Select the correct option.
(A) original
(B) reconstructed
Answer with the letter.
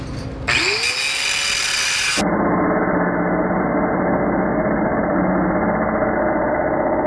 A